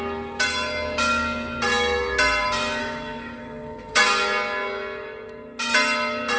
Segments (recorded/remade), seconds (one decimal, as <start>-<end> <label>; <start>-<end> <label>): 0.0-2.8 recorded; 2.8-4.0 remade; 4.0-6.4 recorded